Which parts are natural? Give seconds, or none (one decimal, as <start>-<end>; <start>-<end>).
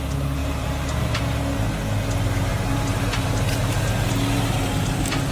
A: 0.0-0.4; 1.2-2.5; 4.1-5.3